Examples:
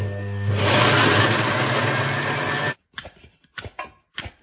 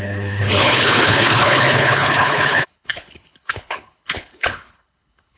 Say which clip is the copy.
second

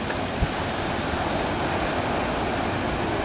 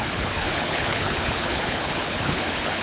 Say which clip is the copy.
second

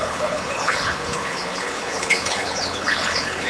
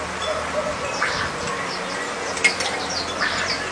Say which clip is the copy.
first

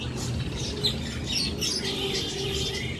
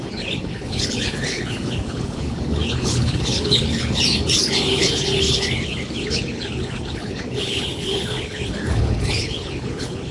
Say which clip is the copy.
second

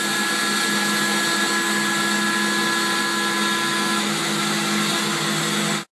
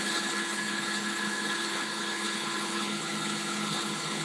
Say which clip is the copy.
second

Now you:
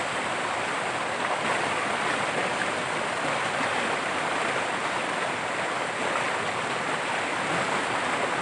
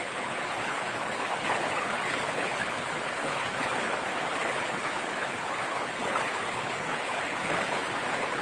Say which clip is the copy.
second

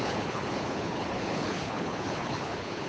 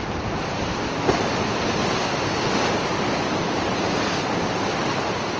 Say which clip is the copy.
first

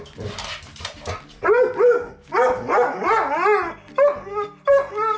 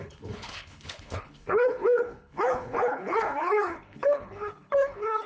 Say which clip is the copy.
second